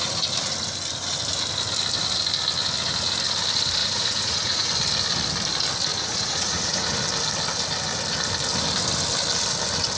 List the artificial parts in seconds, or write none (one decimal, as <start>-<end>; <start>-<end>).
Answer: 3.8-4.7; 5.9-6.9